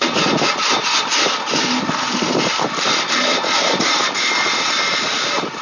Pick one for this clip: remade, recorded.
recorded